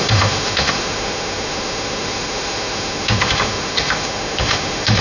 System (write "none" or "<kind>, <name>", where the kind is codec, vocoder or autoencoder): autoencoder, DAC-VAE